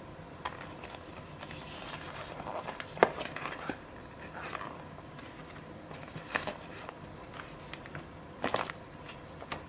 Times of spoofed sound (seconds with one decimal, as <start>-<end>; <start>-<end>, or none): 0.0-9.7